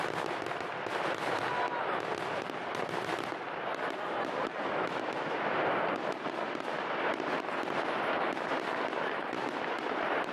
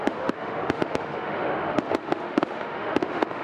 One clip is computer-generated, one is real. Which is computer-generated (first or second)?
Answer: second